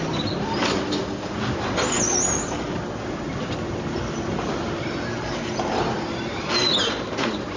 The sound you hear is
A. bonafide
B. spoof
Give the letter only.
A